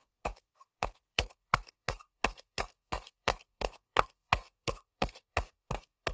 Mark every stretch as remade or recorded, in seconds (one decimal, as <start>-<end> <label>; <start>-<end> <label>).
0.0-6.1 remade